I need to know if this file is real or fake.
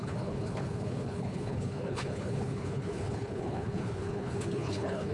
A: fake